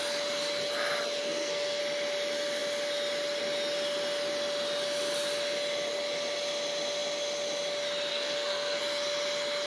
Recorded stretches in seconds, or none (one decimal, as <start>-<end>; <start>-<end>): 0.0-1.2; 1.8-8.1; 8.8-9.7